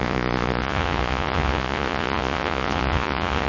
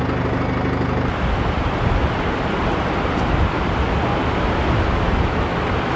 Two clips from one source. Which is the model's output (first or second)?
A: first